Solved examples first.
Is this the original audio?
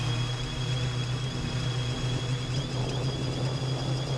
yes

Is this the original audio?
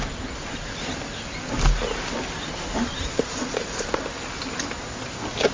yes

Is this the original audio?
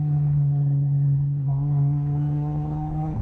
no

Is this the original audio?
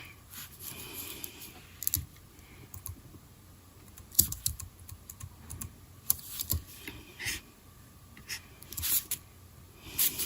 yes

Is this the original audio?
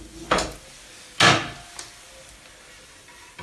yes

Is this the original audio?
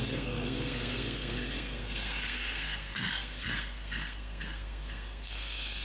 no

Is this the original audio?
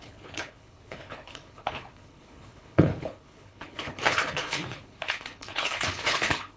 no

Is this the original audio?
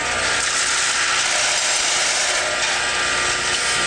yes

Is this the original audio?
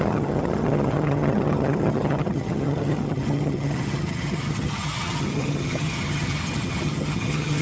no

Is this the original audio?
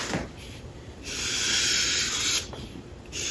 no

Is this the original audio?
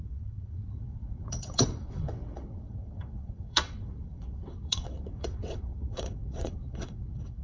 no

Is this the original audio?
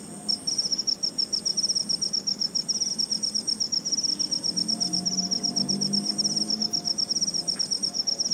yes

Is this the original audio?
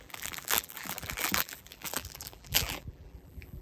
no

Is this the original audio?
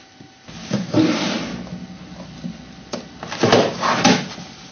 yes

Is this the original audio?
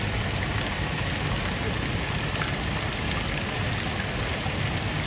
yes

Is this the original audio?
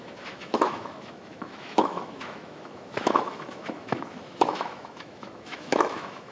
no